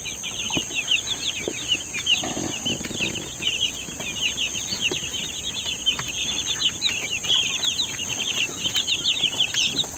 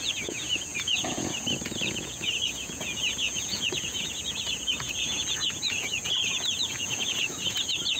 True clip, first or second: first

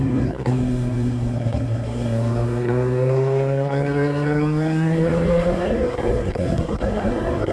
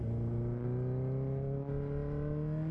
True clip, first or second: second